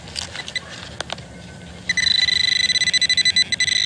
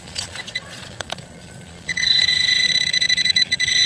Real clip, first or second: first